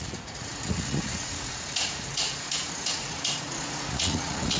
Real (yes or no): no